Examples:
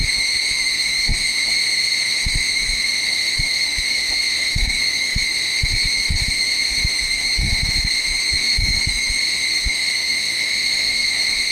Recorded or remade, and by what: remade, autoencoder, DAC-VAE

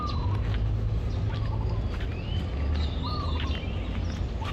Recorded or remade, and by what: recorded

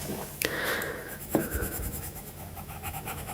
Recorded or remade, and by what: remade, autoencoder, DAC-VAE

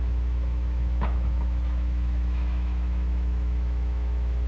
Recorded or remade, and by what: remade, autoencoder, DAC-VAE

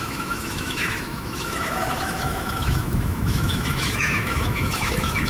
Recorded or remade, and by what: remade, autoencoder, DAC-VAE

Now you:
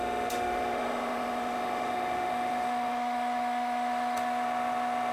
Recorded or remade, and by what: remade, autoencoder, DAC-VAE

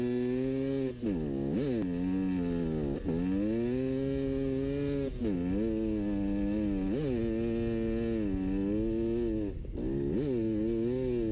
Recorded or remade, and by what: recorded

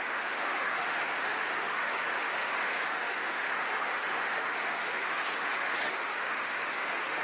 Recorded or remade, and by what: remade, autoencoder, DAC-VAE